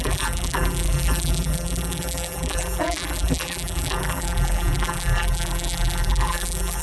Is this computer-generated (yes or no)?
yes